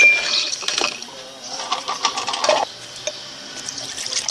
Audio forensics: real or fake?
real